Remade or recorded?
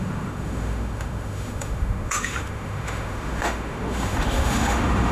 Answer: remade